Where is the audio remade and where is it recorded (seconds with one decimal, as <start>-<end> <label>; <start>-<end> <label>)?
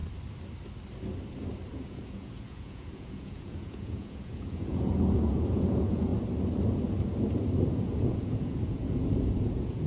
0.0-1.7 recorded; 1.7-6.1 remade; 6.1-7.7 recorded; 7.7-9.9 remade